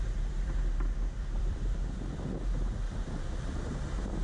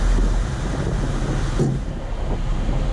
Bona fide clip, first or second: second